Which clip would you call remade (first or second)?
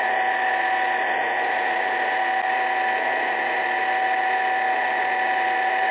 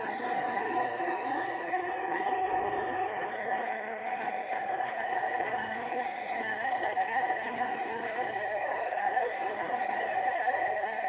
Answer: second